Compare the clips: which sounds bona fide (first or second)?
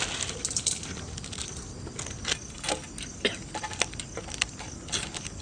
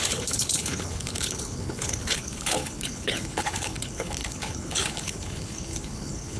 first